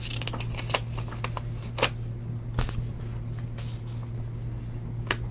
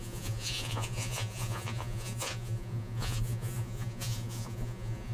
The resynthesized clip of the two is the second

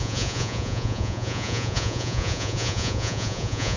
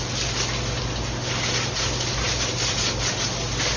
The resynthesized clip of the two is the first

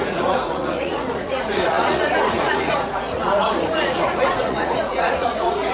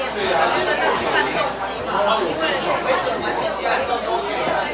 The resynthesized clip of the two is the first